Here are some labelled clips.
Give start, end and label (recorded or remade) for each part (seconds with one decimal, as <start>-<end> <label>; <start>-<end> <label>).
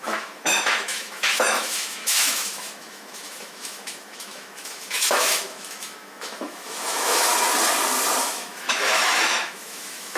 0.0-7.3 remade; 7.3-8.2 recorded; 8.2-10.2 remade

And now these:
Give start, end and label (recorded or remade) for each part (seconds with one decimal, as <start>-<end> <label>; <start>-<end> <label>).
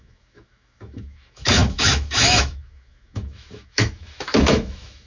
0.0-5.1 remade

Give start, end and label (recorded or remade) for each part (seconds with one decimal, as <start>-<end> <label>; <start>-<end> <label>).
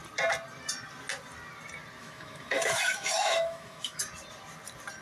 0.0-2.0 recorded; 2.0-4.0 remade; 4.0-5.0 recorded